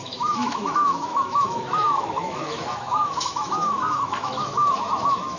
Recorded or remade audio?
remade